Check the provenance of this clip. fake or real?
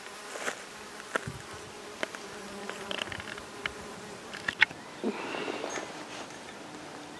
real